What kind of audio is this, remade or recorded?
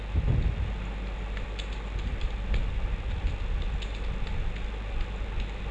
recorded